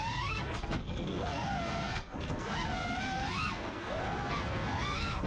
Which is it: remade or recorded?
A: remade